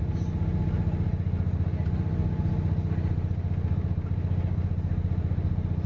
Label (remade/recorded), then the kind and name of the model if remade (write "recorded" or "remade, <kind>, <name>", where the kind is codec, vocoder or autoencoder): recorded